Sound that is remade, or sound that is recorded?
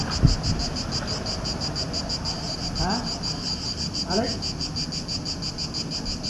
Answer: recorded